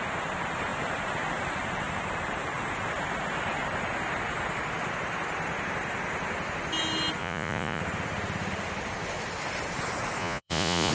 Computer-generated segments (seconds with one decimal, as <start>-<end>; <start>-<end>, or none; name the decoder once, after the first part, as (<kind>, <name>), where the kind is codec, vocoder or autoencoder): 7.2-7.8 (vocoder, Vocos); 10.2-10.9